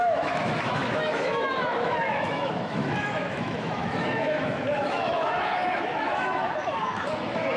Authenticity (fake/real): fake